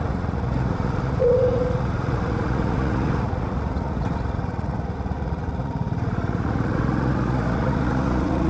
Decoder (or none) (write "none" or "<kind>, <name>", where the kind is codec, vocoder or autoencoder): vocoder, Vocos